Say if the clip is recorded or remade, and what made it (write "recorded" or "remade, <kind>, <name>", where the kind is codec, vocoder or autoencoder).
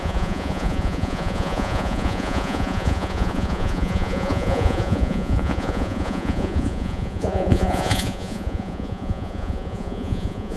remade, vocoder, Vocos